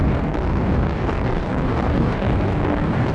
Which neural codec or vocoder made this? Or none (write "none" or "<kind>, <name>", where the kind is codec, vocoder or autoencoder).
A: codec, DAC